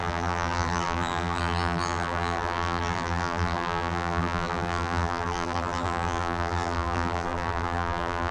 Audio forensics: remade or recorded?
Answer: remade